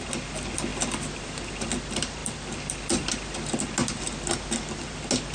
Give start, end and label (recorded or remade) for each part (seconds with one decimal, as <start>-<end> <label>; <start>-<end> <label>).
0.0-5.3 recorded